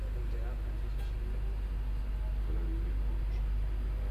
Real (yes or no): yes